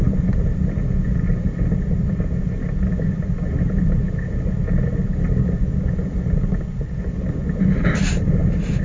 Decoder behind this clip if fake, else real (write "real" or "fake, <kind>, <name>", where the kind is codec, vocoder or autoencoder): real